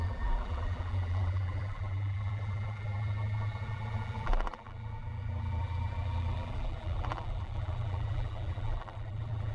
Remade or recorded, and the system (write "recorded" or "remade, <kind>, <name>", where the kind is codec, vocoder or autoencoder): remade, vocoder, BigVGAN v2